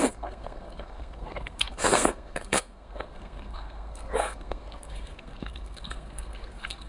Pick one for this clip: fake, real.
fake